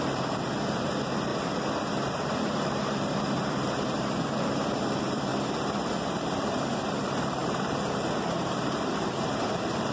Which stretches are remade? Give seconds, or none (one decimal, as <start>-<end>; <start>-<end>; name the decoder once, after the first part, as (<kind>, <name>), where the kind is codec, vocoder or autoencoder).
0.0-1.3 (vocoder, BigVGAN v2); 2.1-9.9